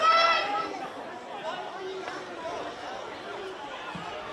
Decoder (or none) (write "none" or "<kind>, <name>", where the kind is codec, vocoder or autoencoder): none